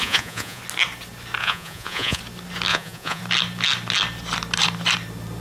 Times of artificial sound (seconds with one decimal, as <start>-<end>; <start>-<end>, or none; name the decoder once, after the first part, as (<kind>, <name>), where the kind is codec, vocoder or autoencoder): 0.0-0.6 (vocoder, Vocos); 1.4-2.2; 2.7-3.2